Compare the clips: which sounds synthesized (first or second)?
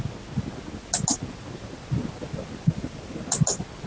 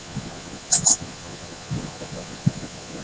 second